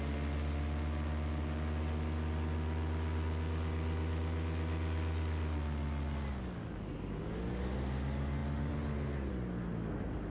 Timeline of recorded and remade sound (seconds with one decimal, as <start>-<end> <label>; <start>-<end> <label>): 0.0-10.3 recorded